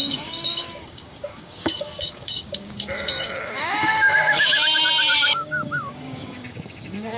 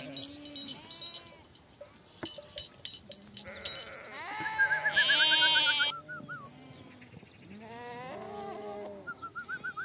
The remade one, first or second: first